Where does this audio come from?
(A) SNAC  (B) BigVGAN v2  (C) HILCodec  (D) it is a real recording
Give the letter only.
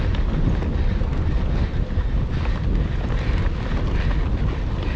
D